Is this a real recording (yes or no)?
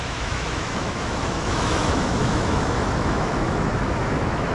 no